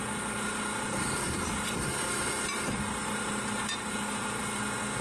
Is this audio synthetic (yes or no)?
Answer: no